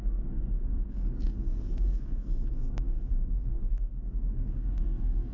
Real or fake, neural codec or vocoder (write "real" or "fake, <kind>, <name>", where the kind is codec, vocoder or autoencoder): fake, codec, SNAC